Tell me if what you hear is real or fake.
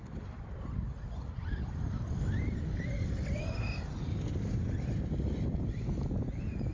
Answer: real